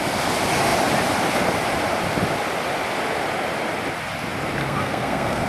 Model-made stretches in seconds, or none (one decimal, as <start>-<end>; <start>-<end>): 4.6-5.5